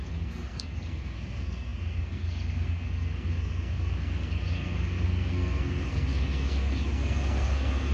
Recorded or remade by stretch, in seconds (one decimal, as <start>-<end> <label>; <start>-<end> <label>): 0.0-7.9 remade